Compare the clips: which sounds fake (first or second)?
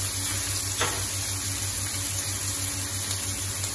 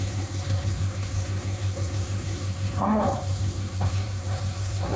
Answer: second